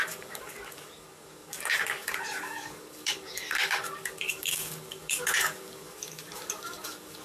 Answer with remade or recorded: remade